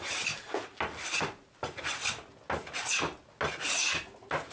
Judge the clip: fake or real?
real